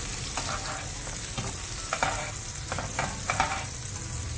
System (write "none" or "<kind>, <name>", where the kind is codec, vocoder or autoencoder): none